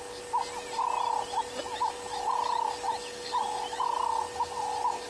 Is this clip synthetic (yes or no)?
no